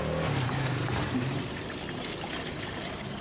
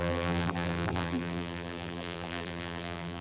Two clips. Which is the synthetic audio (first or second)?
second